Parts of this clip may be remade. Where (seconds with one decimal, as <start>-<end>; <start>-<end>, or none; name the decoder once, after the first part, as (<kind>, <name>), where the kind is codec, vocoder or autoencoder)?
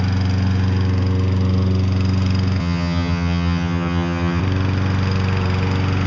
2.6-4.4 (vocoder, HiFi-GAN)